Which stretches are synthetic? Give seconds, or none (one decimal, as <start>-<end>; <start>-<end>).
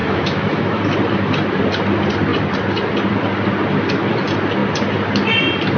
0.0-0.8